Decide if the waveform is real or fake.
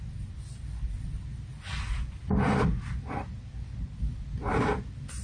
real